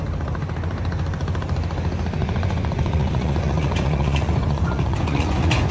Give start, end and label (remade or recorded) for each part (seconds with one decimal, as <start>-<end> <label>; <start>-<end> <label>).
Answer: 0.0-2.2 recorded; 2.2-5.7 remade